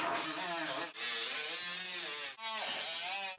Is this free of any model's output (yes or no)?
yes